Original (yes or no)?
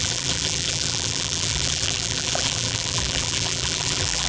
no